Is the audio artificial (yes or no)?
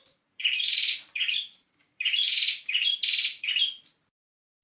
yes